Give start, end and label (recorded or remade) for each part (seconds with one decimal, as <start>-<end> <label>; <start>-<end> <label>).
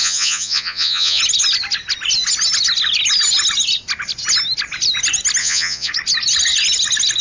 0.0-1.2 remade; 1.2-5.4 recorded; 5.4-5.9 remade; 5.9-7.2 recorded